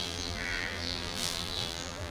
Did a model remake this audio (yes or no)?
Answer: yes